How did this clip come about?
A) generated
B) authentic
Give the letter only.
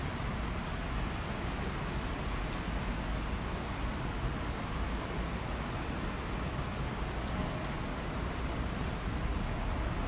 B